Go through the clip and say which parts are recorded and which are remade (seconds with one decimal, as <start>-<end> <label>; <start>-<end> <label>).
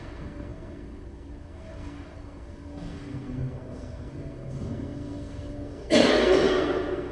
0.0-7.1 remade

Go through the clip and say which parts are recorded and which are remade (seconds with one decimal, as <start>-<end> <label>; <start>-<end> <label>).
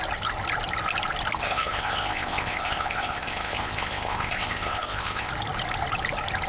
0.0-1.4 recorded; 1.4-5.3 remade; 5.3-6.5 recorded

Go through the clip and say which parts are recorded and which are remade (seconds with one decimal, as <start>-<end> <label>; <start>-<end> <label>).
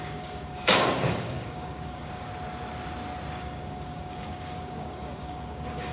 0.0-2.3 remade; 2.3-3.3 recorded; 3.3-5.9 remade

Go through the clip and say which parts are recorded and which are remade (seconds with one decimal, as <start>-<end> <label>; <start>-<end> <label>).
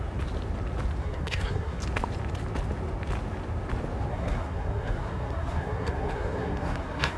0.0-1.0 recorded; 1.0-1.8 remade; 1.8-4.1 recorded; 4.1-7.2 remade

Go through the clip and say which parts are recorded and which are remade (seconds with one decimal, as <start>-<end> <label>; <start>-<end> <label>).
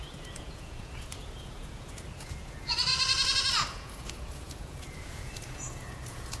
0.0-6.4 remade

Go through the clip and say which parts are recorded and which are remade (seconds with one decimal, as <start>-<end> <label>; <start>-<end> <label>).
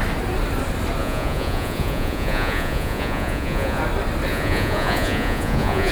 0.0-1.0 recorded; 1.0-3.8 remade; 3.8-4.3 recorded; 4.3-5.9 remade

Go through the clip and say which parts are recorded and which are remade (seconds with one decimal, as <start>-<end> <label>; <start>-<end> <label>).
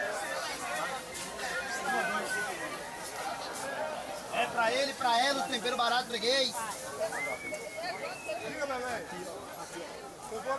0.0-10.6 recorded